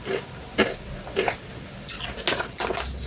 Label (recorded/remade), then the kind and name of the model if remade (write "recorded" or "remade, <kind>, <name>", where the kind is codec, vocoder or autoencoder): recorded